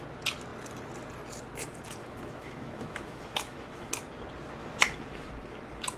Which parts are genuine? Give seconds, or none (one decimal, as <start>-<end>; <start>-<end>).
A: 0.0-2.0; 3.9-4.6; 5.3-6.0